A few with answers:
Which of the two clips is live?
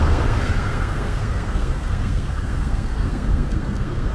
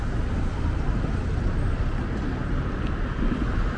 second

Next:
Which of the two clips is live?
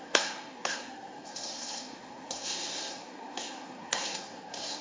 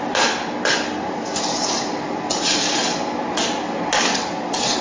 second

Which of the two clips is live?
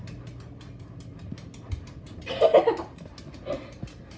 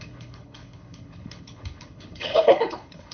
first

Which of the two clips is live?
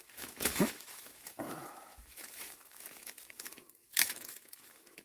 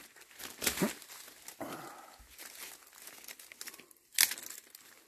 second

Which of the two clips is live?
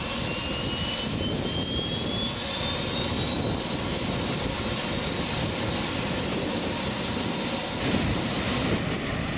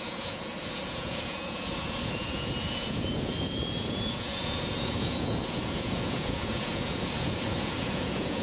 first